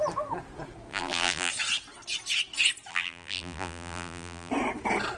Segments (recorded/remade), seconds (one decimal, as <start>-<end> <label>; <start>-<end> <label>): 0.0-0.9 recorded; 0.9-1.5 remade; 1.5-2.9 recorded; 2.9-4.5 remade; 4.5-5.2 recorded